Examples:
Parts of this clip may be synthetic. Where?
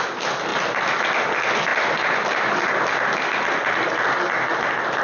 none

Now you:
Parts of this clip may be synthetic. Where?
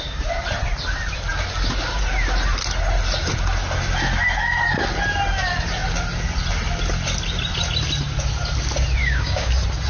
9.0-9.5 (codec, DAC)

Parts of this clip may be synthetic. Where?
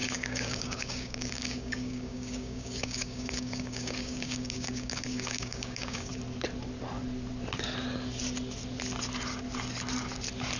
0.0-6.1 (codec, DAC)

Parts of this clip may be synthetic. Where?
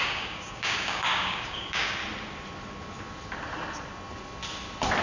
0.0-2.0 (codec, DAC)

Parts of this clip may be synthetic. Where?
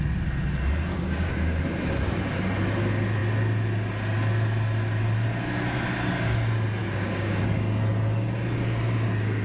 0.9-1.6 (codec, DAC); 6.8-7.4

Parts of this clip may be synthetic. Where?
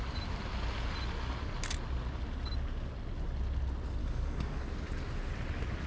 4.0-4.6 (codec, DAC)